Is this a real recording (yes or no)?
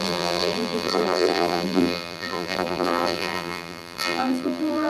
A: no